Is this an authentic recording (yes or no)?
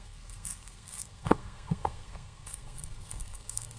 no